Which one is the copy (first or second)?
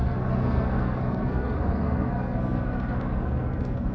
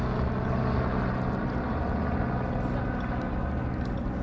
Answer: first